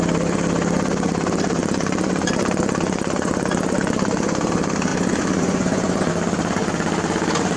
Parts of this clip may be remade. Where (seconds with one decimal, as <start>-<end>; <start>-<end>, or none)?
1.6-4.5; 4.9-6.1